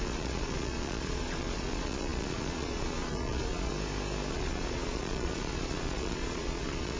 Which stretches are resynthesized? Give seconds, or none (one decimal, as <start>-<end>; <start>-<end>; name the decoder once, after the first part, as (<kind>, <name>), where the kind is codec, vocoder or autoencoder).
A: 0.0-3.7 (vocoder, Vocos); 4.3-7.0